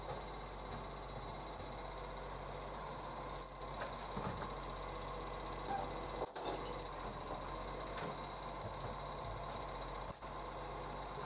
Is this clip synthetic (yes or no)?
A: no